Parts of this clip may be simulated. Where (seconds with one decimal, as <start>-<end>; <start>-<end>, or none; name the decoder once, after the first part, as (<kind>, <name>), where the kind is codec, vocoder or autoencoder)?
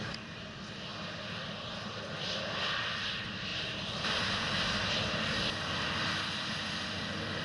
3.5-4.2 (vocoder, BigVGAN v2)